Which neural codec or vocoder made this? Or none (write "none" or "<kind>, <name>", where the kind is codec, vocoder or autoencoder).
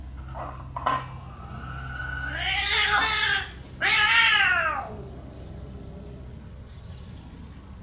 none